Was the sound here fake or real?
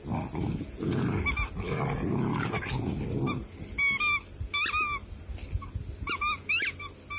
real